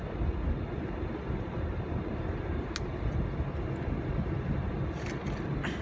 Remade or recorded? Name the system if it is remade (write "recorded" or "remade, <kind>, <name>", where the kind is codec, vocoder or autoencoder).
recorded